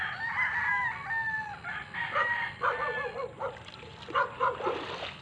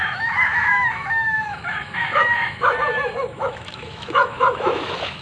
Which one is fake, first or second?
second